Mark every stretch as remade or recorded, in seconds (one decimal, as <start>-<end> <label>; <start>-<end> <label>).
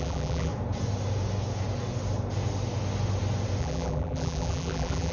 0.0-0.5 remade; 0.5-3.6 recorded; 3.6-5.1 remade